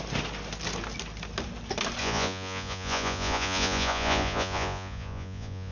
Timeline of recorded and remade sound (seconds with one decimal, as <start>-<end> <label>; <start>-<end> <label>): 0.0-2.0 recorded; 2.0-5.7 remade